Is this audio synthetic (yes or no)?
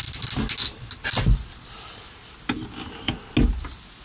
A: no